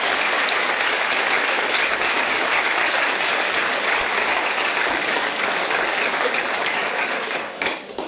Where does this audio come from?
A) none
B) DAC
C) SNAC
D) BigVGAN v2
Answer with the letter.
B